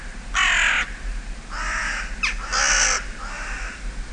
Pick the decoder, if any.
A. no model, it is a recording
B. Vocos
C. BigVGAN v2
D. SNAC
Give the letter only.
A